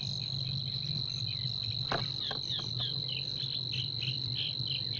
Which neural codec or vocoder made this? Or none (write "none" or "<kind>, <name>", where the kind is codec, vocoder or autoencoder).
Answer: none